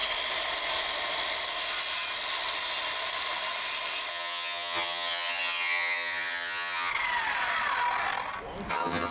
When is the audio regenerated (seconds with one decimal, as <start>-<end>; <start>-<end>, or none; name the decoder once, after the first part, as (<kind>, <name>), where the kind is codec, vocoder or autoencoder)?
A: 4.1-6.9 (vocoder, HiFi-GAN); 8.7-9.1